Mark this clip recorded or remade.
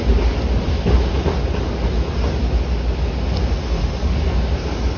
recorded